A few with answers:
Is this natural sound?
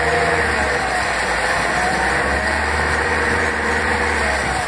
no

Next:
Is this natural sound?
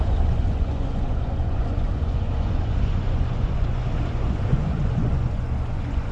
no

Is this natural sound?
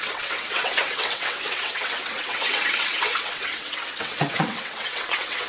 no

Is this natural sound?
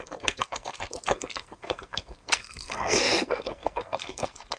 no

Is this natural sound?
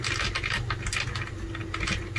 yes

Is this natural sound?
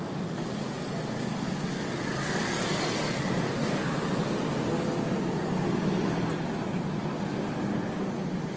yes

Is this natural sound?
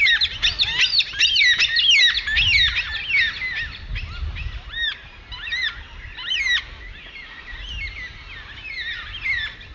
yes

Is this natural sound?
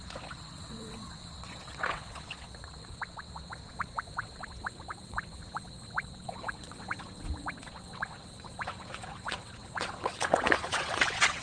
no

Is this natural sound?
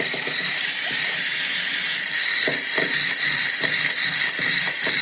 yes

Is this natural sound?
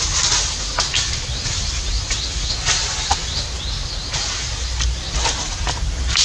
yes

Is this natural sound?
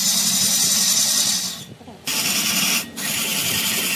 yes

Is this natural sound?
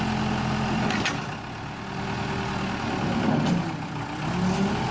yes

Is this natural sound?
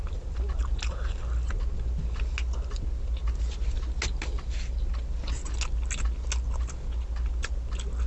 yes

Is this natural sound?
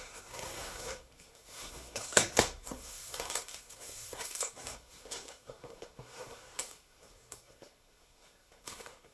no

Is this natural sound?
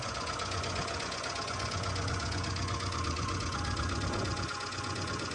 no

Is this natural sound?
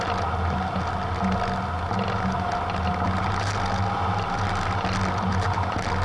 yes